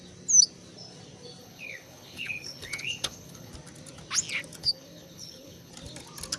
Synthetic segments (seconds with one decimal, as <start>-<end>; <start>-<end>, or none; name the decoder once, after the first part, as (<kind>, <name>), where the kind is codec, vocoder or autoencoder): 1.4-3.5 (codec, HILCodec); 4.6-5.7